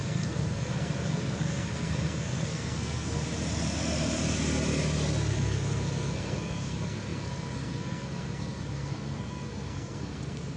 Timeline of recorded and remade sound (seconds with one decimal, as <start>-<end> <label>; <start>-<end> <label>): 0.0-3.2 remade; 3.2-5.3 recorded; 5.3-10.6 remade